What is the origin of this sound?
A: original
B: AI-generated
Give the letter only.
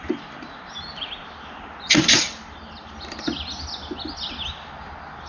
B